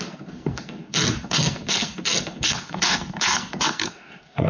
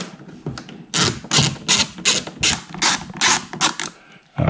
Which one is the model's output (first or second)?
first